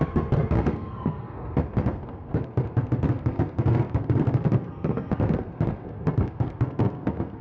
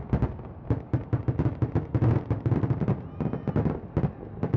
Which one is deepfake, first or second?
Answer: first